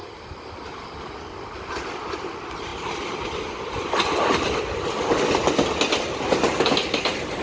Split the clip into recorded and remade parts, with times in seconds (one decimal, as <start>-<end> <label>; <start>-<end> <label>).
0.0-7.4 recorded